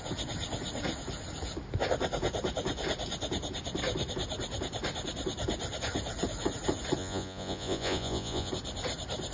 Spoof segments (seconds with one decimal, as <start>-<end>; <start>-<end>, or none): 7.0-8.5